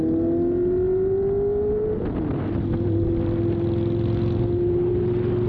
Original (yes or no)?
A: yes